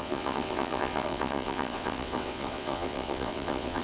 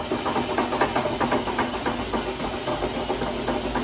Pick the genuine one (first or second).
second